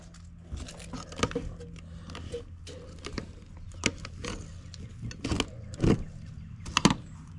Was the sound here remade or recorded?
recorded